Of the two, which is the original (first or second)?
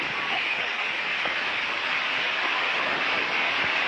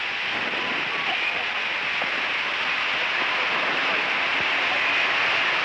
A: second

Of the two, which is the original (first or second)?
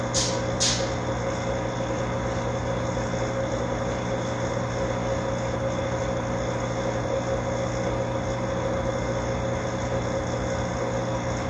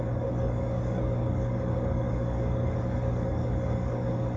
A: first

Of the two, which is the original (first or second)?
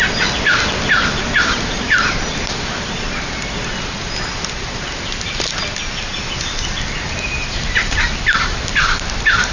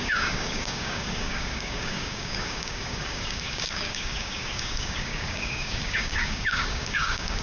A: first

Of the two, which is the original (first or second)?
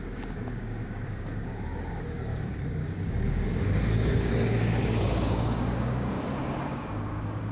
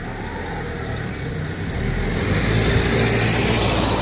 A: second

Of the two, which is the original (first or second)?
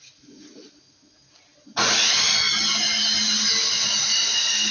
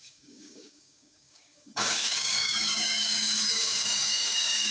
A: first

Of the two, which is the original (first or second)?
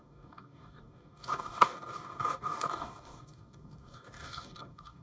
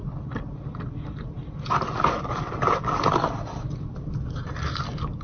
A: second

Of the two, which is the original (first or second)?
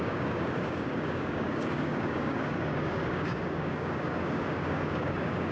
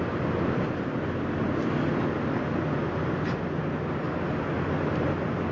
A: second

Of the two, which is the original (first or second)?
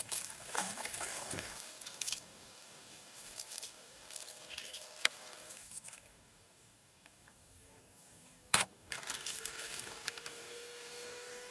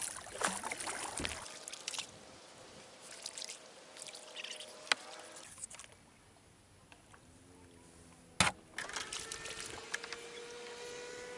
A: second